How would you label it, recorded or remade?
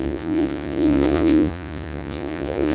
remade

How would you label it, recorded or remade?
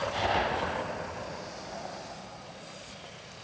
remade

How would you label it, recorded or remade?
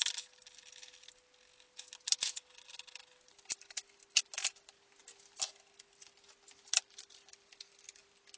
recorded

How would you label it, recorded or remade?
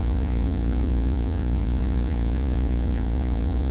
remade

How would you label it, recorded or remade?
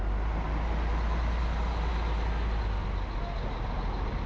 recorded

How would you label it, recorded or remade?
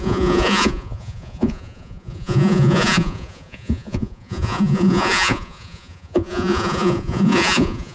remade